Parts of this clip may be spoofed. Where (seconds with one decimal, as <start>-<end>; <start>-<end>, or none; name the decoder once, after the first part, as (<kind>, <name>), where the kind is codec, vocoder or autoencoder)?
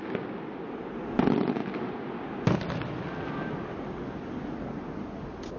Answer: none